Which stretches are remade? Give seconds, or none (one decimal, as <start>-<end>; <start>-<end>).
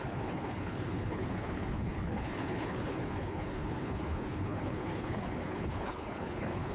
0.0-6.7